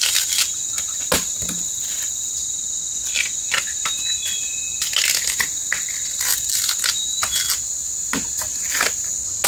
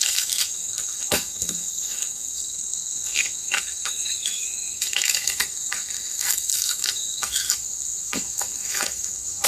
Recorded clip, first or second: first